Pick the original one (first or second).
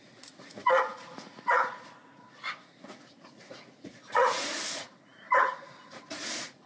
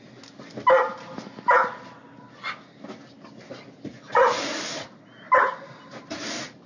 second